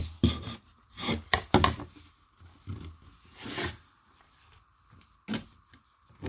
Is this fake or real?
real